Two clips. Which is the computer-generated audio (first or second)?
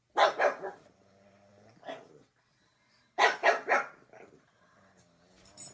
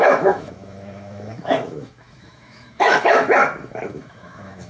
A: second